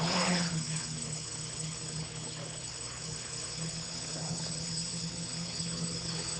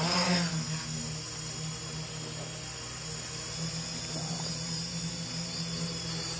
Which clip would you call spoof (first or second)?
first